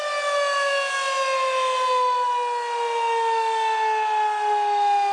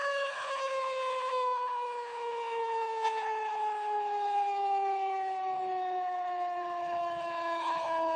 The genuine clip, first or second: first